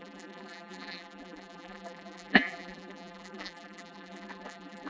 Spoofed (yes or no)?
yes